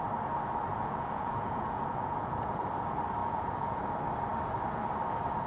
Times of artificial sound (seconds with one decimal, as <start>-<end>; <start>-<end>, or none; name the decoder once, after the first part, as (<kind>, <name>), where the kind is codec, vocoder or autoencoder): 0.7-2.7 (vocoder, Vocos); 3.2-3.8